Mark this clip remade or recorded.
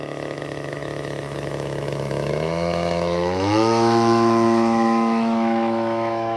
remade